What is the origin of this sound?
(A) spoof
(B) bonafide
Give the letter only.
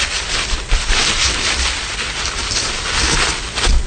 B